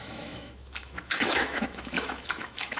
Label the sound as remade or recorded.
remade